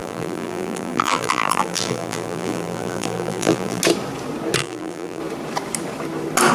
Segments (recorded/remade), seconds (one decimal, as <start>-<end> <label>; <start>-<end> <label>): 0.0-3.8 remade; 3.8-4.6 recorded; 4.6-5.2 remade; 5.2-6.5 recorded

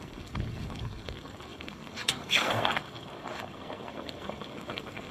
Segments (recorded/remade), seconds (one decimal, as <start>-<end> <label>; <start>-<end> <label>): 0.0-5.1 remade

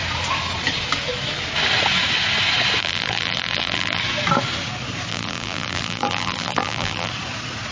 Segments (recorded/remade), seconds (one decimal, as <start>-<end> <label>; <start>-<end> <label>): 0.0-2.8 recorded; 2.8-4.0 remade; 4.0-5.1 recorded; 5.1-7.1 remade; 7.1-7.7 recorded

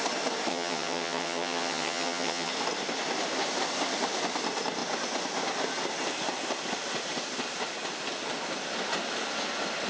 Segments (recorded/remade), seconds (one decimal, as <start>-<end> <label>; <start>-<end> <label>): 0.0-0.5 recorded; 0.5-2.5 remade; 2.5-9.9 recorded

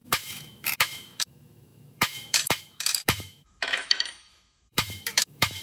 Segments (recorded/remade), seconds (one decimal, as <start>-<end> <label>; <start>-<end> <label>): 0.0-5.6 remade

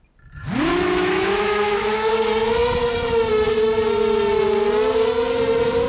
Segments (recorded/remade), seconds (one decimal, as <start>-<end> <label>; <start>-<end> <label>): 0.0-0.7 recorded; 0.7-2.1 remade; 2.1-5.9 recorded

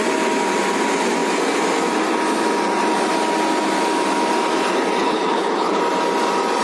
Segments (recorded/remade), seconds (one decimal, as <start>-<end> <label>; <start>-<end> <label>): 0.0-5.0 recorded; 5.0-5.8 remade; 5.8-6.6 recorded